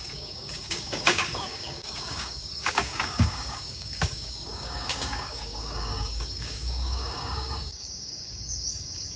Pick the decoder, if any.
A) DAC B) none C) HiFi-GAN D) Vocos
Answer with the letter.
A